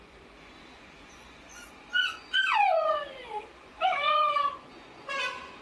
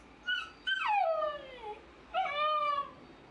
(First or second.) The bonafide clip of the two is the second